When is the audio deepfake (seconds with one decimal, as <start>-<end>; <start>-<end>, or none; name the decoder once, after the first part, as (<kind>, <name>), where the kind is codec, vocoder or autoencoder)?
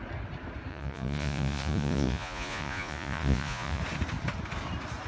0.7-3.8 (vocoder, Vocos)